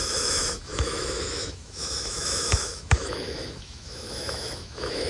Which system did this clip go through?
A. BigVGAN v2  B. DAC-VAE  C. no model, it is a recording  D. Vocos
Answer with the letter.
B